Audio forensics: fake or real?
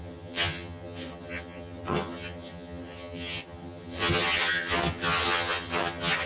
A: fake